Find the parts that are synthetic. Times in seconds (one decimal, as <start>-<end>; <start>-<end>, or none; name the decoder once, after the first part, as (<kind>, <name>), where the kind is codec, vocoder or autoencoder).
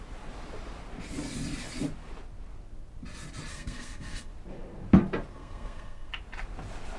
3.5-4.3 (codec, SNAC); 5.3-6.1